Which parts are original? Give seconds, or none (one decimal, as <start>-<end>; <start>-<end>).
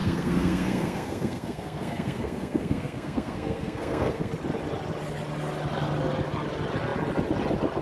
4.3-7.8